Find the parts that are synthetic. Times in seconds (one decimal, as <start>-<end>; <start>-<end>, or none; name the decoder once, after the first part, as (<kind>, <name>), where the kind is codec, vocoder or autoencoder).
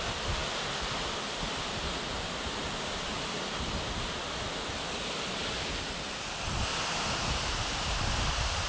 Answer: none